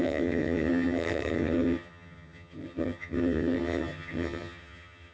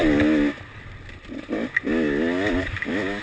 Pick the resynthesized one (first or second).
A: first